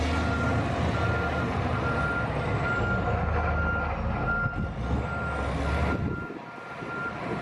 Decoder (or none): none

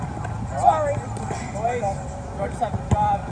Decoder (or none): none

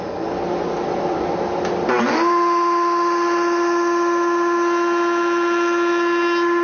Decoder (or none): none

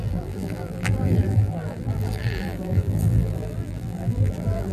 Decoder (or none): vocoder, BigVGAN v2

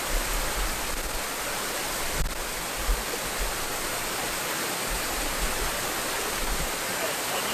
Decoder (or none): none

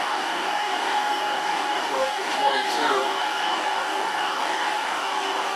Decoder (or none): codec, DAC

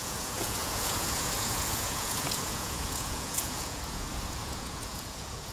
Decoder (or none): vocoder, Vocos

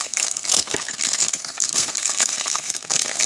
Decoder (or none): codec, SNAC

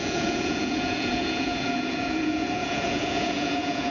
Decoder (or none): vocoder, Vocos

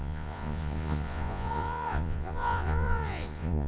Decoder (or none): vocoder, Vocos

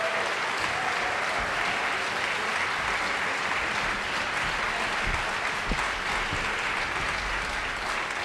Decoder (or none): none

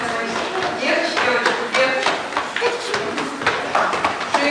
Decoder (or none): none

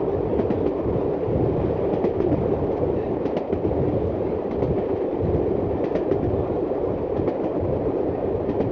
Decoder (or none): none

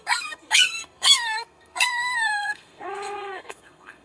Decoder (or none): codec, SNAC